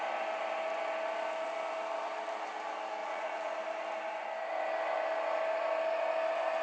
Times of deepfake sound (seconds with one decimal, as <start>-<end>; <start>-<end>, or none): 3.0-3.5